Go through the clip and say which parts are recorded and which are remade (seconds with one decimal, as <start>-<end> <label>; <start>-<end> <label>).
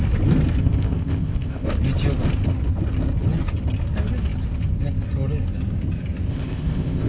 0.0-0.6 recorded; 0.6-1.7 remade; 1.7-6.3 recorded; 6.3-7.1 remade